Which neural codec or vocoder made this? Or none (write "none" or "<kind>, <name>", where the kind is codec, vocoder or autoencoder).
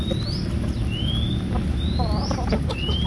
none